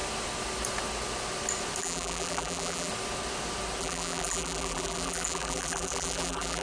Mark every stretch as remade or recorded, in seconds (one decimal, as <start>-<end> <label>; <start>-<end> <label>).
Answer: 0.0-1.8 recorded; 1.8-2.9 remade; 2.9-3.8 recorded; 3.8-6.6 remade